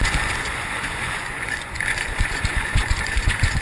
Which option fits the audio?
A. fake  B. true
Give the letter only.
A